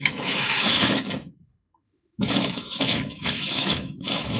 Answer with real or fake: fake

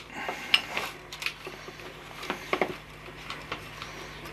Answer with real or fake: real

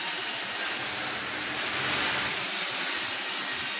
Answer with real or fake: real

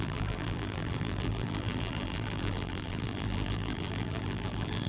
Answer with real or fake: fake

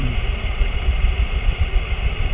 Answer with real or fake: fake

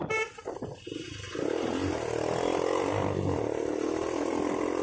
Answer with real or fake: real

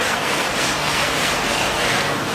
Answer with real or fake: fake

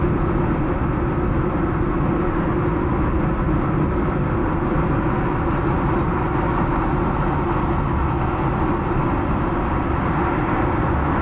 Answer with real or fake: real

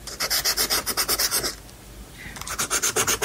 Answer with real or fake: real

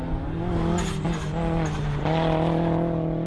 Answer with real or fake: real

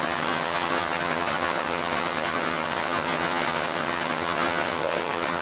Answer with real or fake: fake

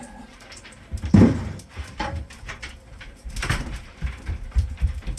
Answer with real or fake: fake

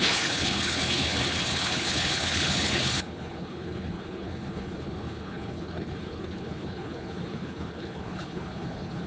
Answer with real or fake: fake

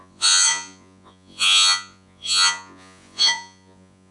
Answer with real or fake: fake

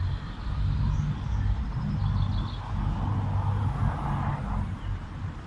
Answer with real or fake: real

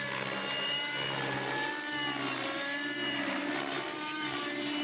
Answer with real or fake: real